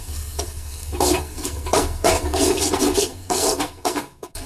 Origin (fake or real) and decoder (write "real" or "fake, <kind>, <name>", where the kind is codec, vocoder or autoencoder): fake, codec, SNAC